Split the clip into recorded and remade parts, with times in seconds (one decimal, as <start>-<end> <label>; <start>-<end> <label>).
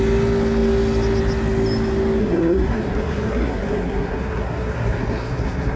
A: 0.0-2.2 recorded; 2.2-5.8 remade